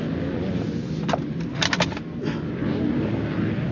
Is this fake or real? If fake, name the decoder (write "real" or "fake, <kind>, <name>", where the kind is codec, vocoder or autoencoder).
real